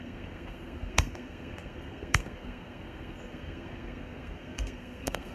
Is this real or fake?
fake